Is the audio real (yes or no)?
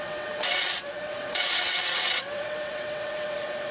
no